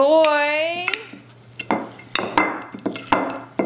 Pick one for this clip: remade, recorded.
recorded